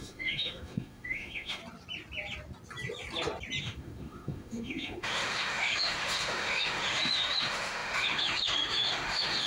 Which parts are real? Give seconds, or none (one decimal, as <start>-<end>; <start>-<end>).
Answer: 1.6-3.6